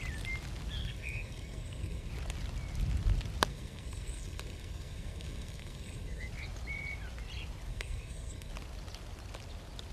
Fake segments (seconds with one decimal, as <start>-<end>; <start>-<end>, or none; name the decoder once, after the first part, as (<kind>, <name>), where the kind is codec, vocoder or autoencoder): 0.8-2.1 (codec, SNAC); 3.5-6.3; 7.7-8.5